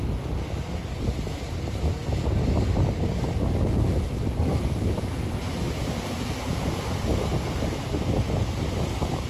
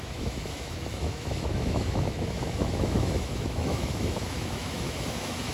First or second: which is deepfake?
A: second